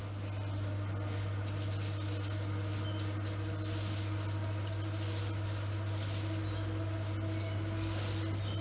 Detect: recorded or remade recorded